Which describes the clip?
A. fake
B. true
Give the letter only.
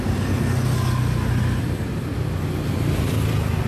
B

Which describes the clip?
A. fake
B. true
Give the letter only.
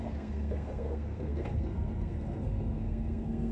A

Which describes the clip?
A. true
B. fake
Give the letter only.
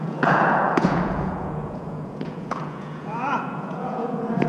B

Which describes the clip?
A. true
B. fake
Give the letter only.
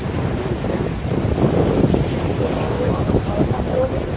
A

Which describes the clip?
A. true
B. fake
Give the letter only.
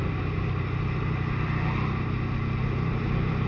A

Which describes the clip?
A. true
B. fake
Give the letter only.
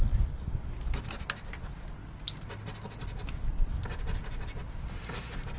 A